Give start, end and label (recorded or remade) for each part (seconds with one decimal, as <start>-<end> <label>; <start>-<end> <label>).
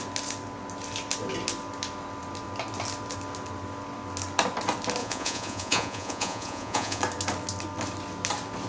0.0-5.0 recorded; 5.0-7.0 remade; 7.0-8.7 recorded